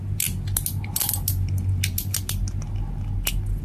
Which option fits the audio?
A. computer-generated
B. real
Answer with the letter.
B